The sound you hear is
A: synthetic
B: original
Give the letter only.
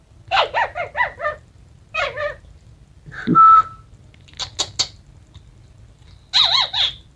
B